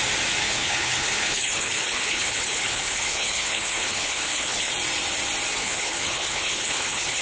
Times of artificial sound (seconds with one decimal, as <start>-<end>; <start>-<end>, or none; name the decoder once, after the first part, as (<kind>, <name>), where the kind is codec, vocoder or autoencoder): 0.4-4.7 (codec, HILCodec); 5.6-7.2